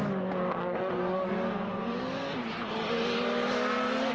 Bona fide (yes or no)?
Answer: yes